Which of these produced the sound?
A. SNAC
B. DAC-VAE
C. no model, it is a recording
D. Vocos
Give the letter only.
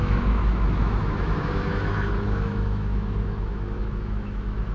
B